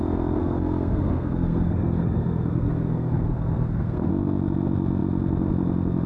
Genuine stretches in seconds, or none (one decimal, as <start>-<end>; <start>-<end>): 0.0-0.4; 4.1-6.1